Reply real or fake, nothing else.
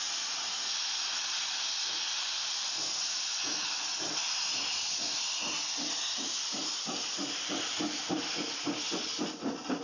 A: real